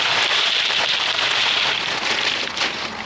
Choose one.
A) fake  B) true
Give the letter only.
B